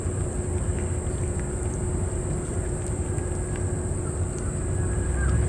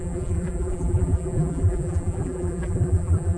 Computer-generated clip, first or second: second